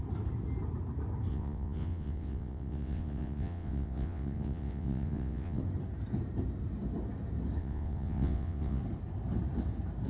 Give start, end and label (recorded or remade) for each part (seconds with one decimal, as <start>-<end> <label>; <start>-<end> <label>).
0.0-1.3 recorded; 1.3-5.6 remade; 5.6-7.6 recorded; 7.6-8.8 remade; 8.8-10.1 recorded